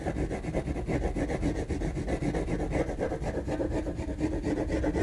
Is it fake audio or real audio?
real